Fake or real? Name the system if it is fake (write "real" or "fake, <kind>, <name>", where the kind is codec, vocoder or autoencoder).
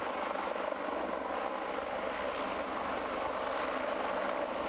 real